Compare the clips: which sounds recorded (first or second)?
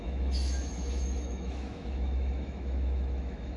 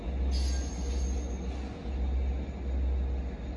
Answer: second